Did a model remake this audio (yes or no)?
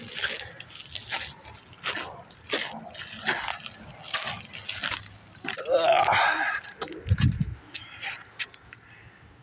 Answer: no